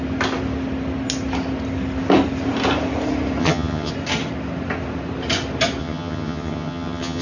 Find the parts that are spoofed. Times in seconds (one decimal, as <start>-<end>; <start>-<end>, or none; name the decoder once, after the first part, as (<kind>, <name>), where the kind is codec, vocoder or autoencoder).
3.4-3.9 (vocoder, HiFi-GAN); 5.8-7.2